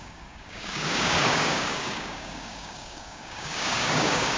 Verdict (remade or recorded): remade